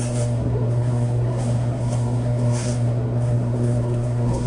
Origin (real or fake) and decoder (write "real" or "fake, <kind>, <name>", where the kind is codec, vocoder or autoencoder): fake, codec, SNAC